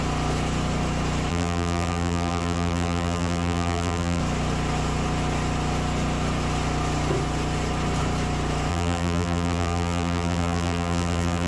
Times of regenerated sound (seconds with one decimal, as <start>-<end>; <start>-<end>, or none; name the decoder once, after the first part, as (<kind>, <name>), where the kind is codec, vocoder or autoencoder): 1.3-4.2 (vocoder, BigVGAN v2); 8.7-11.5